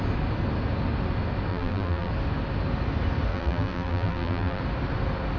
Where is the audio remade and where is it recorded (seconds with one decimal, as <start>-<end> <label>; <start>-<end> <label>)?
0.0-1.5 recorded; 1.5-2.1 remade; 2.1-3.3 recorded; 3.3-4.6 remade; 4.6-5.4 recorded